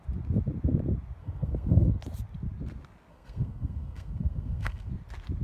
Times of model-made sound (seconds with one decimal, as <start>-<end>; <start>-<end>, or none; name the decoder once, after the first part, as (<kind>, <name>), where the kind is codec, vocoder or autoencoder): 1.2-2.0 (codec, SNAC); 3.1-4.9